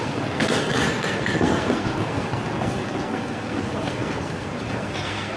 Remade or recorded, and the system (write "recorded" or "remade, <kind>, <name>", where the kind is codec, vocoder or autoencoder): remade, codec, SNAC